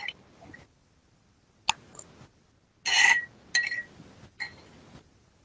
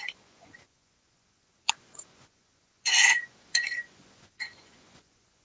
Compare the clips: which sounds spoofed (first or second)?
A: second